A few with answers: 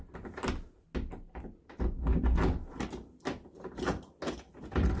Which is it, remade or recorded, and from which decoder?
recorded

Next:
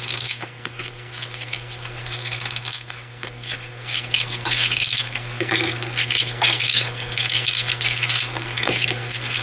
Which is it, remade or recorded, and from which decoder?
remade, codec, SNAC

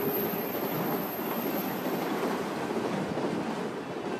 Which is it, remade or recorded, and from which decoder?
recorded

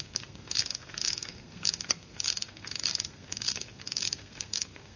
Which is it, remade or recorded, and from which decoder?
remade, codec, SNAC